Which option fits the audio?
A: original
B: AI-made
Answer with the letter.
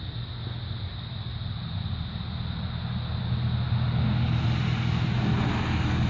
A